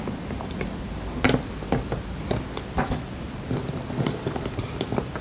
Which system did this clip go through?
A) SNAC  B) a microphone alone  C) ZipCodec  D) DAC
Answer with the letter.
B